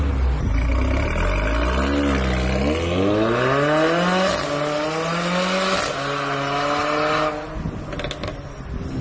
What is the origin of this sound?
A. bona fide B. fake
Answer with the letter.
A